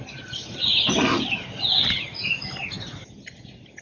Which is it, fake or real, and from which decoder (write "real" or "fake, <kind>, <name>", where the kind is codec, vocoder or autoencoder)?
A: real